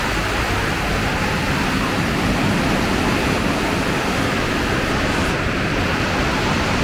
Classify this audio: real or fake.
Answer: real